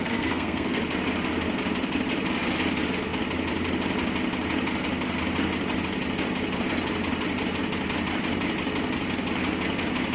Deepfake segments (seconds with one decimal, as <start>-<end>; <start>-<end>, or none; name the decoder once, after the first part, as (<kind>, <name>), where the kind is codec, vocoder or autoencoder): 0.0-0.8 (codec, SNAC)